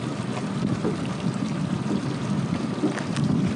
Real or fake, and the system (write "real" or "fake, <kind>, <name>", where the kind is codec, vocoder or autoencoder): fake, vocoder, BigVGAN v2